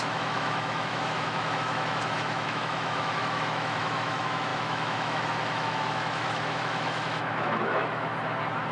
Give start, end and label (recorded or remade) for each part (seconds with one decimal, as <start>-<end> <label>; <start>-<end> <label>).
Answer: 0.0-8.1 remade; 8.1-8.7 recorded